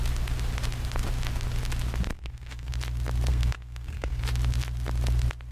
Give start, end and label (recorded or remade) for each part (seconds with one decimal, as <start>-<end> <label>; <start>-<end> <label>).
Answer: 0.0-2.1 recorded; 2.1-2.7 remade; 2.7-3.3 recorded; 3.3-4.2 remade; 4.2-5.5 recorded

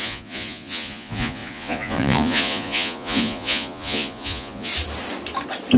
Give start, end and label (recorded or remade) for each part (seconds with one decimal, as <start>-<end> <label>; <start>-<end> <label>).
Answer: 0.0-4.7 remade; 4.7-5.8 recorded

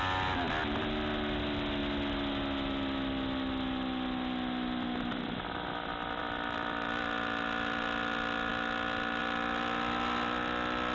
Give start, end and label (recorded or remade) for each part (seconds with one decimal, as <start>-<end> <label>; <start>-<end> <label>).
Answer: 0.0-10.9 recorded

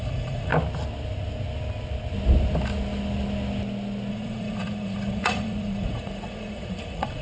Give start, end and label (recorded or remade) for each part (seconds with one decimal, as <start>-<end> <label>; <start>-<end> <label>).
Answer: 0.0-0.5 remade; 0.5-4.1 recorded; 4.1-7.2 remade

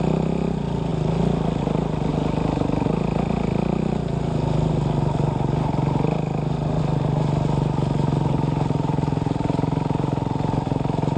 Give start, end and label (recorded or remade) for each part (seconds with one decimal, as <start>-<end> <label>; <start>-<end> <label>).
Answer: 0.0-11.2 recorded

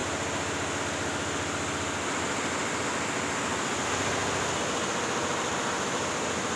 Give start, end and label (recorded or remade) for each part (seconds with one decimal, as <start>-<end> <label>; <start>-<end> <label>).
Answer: 0.0-6.6 recorded

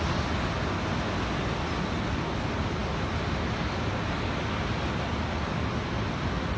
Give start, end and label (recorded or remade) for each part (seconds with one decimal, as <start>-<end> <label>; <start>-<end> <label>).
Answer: 0.0-6.6 recorded

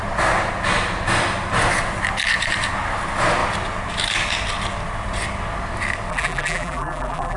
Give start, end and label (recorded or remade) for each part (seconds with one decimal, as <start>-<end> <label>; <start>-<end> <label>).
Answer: 0.0-6.1 recorded; 6.1-7.4 remade